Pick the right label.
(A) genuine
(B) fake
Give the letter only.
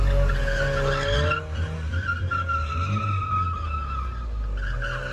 A